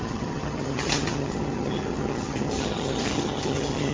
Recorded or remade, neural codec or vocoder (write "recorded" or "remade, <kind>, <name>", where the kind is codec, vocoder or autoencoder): remade, vocoder, HiFi-GAN